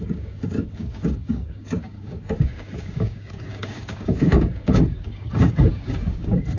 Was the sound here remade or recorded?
remade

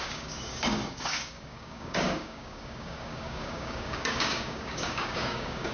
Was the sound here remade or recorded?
remade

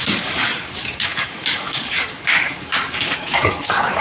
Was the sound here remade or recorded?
remade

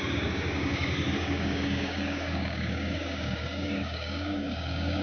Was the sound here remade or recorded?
remade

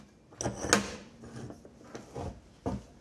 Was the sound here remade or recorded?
recorded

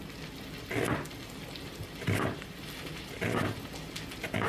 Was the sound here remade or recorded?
recorded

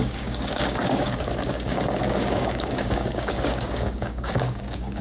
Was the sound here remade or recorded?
remade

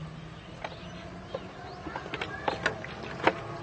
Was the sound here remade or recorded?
recorded